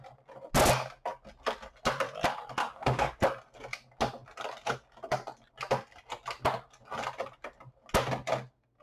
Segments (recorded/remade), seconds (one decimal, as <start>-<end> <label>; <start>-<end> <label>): 0.0-2.6 recorded; 2.6-3.2 remade; 3.2-8.8 recorded

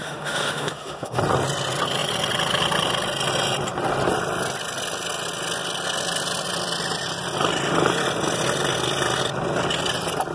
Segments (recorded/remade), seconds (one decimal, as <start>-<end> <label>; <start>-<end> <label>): 0.0-1.2 remade; 1.2-10.3 recorded

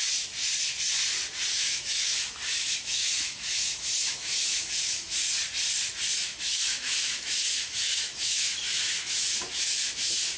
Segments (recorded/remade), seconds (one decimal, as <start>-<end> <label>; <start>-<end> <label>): 0.0-1.5 recorded; 1.5-5.2 remade; 5.2-6.2 recorded; 6.2-10.4 remade